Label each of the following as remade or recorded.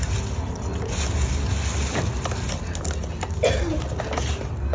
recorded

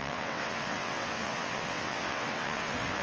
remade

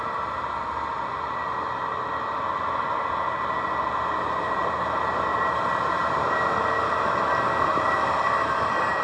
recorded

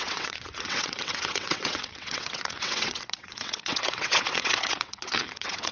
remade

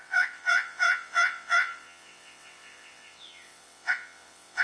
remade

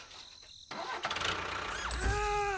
recorded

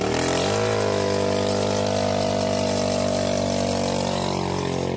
recorded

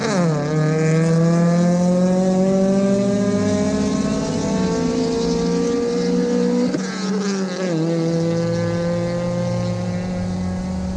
recorded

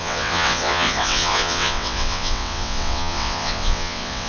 remade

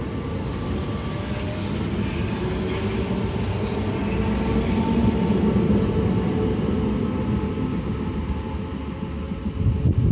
recorded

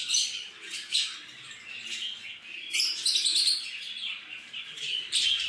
recorded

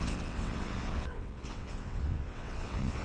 remade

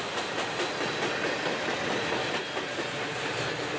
recorded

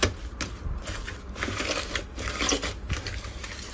recorded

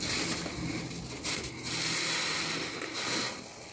recorded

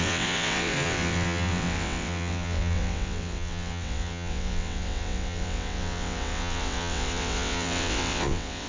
remade